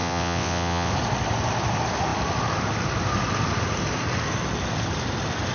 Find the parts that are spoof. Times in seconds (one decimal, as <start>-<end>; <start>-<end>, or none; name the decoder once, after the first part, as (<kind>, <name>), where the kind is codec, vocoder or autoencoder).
0.0-0.9 (vocoder, WaveNeXt)